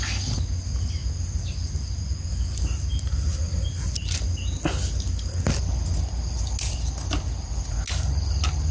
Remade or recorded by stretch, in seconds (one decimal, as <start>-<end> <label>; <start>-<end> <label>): 0.0-8.7 recorded